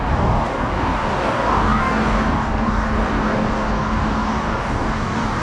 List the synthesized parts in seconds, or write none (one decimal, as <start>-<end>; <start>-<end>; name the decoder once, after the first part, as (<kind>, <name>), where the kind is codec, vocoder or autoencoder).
0.0-5.4 (codec, DAC)